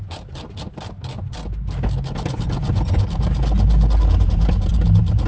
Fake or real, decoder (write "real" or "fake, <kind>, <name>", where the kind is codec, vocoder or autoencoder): real